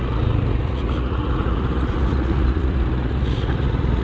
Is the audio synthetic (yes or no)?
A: yes